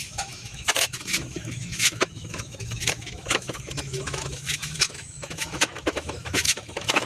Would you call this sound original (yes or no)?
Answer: no